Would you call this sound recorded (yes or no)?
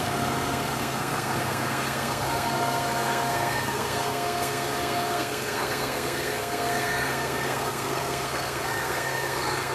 no